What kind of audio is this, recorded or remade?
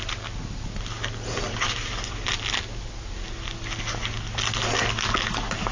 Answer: recorded